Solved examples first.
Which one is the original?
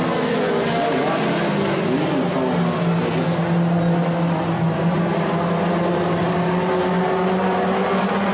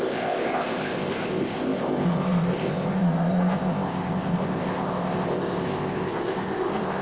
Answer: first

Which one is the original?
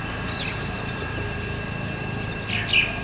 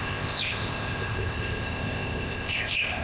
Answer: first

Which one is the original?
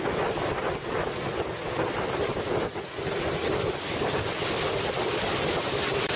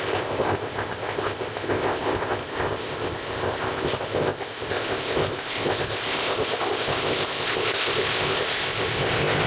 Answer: first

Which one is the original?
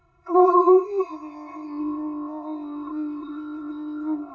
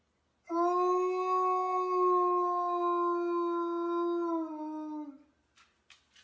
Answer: second